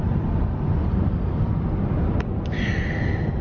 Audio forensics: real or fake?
real